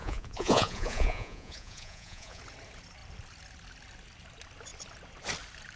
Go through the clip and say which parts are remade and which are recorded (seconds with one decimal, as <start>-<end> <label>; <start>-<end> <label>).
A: 0.0-2.4 remade; 2.4-5.8 recorded